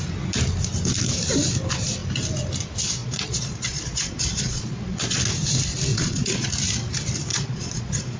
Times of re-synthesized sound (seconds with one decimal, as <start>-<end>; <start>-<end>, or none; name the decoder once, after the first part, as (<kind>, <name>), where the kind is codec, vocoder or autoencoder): 3.0-5.2 (vocoder, Vocos); 5.9-6.5; 7.3-8.2